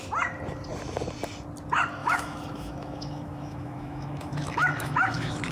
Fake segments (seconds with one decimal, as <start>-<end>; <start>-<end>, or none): 2.0-5.5